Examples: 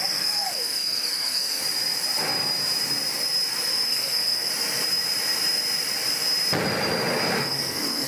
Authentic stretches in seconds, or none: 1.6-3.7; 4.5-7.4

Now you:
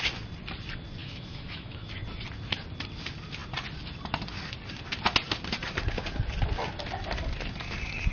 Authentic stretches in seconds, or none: 0.0-1.0; 1.9-8.1